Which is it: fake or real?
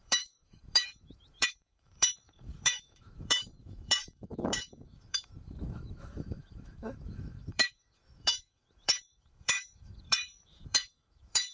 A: fake